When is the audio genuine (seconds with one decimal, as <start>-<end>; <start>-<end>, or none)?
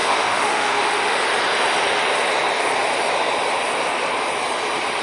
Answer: 1.2-5.0